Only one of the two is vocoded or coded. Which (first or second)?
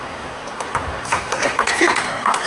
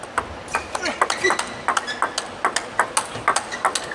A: first